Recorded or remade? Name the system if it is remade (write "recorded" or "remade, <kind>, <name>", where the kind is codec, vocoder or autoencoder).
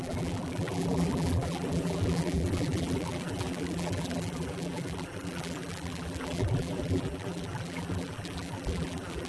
remade, vocoder, BigVGAN v2